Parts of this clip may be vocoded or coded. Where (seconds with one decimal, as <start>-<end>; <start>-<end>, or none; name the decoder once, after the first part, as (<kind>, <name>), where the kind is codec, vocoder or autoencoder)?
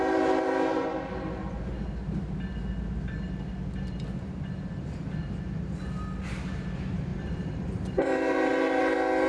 7.1-8.8 (vocoder, BigVGAN v2)